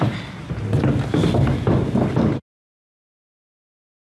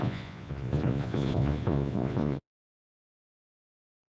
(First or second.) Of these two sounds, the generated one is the second